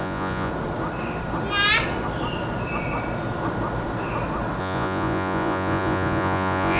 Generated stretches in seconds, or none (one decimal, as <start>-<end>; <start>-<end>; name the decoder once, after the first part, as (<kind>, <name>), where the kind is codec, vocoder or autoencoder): 0.0-0.5 (vocoder, Vocos); 4.6-6.8